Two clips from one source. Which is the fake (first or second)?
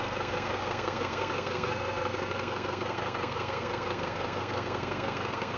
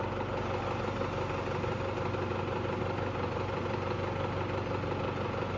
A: first